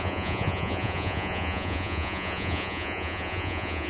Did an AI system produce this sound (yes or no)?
yes